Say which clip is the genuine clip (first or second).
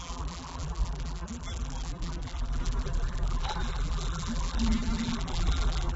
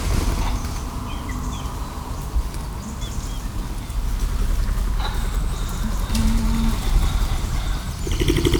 second